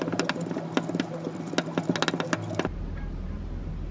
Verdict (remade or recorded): recorded